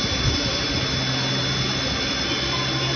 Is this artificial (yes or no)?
no